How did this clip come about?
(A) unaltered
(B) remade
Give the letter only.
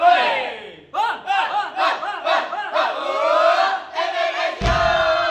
A